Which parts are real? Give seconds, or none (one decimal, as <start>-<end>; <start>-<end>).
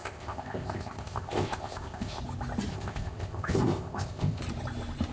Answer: 2.2-2.7; 4.4-5.1